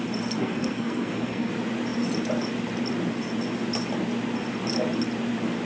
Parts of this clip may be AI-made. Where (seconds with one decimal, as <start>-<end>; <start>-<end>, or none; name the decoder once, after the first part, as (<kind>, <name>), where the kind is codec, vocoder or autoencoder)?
0.4-1.5 (codec, SNAC)